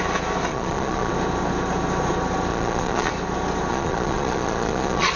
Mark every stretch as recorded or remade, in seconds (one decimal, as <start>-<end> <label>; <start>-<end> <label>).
0.0-0.5 recorded; 0.5-1.1 remade; 1.1-2.5 recorded; 2.5-3.1 remade; 3.1-3.7 recorded; 3.7-5.2 remade